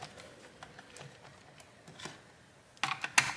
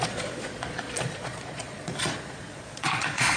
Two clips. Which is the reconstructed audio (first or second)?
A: second